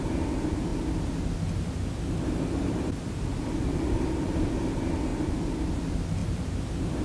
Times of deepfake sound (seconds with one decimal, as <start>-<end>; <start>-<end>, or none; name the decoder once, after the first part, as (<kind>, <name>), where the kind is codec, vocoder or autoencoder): 0.0-0.7 (vocoder, BigVGAN v2); 3.4-5.1; 5.7-7.0